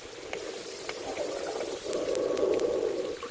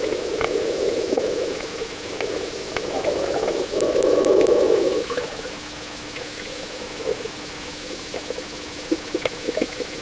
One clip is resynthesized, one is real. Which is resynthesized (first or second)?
second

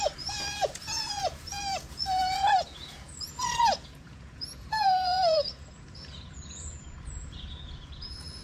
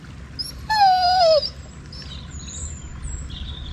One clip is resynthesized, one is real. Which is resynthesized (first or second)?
first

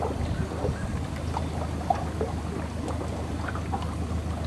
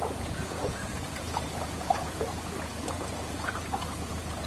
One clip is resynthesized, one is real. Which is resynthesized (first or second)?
second